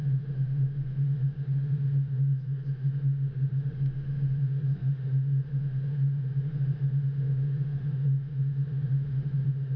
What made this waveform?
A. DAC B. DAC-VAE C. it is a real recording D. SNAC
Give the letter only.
B